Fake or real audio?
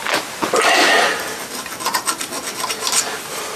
real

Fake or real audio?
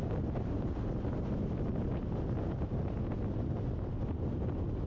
real